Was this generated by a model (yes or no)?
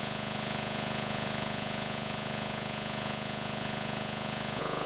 yes